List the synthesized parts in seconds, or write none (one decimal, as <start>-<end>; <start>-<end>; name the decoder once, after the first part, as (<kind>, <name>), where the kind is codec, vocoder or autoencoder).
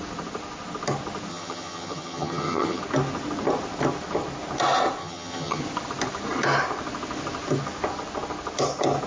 1.3-2.8 (vocoder, HiFi-GAN); 5.0-5.6